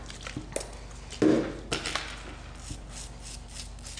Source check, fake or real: real